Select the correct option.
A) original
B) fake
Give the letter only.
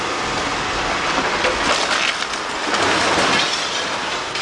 A